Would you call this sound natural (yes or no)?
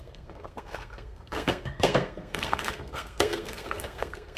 no